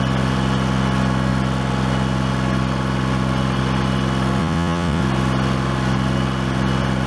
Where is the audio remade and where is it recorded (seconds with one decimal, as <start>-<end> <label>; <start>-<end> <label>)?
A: 0.0-4.4 recorded; 4.4-5.0 remade; 5.0-7.1 recorded

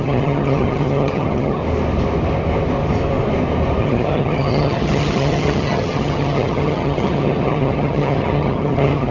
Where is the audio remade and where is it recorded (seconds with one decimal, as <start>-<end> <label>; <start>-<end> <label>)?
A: 0.0-1.6 remade; 1.6-3.8 recorded; 3.8-9.1 remade

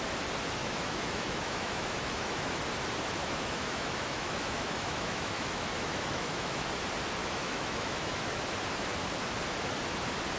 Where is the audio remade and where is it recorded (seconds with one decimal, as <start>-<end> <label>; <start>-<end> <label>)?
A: 0.0-0.6 recorded; 0.6-2.6 remade; 2.6-3.2 recorded; 3.2-6.7 remade; 6.7-7.2 recorded; 7.2-8.4 remade; 8.4-10.4 recorded